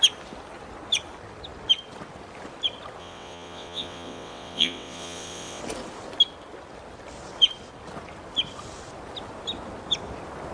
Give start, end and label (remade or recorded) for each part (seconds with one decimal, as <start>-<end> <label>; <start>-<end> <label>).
0.0-3.0 recorded; 3.0-5.6 remade; 5.6-10.5 recorded